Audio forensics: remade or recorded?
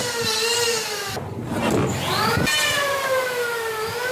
recorded